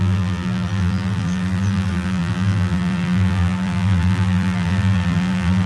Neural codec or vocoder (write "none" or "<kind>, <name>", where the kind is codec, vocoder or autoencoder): vocoder, BigVGAN v2